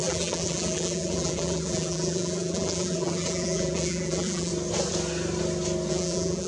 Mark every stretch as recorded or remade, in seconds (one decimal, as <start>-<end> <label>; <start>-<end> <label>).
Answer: 0.0-4.5 remade; 4.5-5.9 recorded; 5.9-6.5 remade